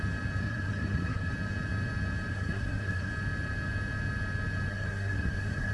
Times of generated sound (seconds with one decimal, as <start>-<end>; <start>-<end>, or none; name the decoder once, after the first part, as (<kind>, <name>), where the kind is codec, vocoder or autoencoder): 0.4-1.3 (codec, SNAC); 2.3-3.1; 4.7-5.7